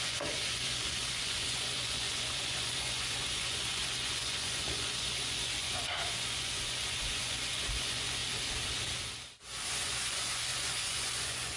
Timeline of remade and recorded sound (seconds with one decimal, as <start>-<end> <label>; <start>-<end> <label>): 0.0-8.2 remade; 8.2-9.7 recorded; 9.7-11.6 remade